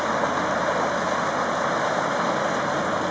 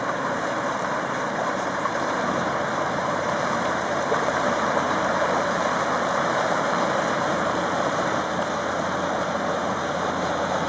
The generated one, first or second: second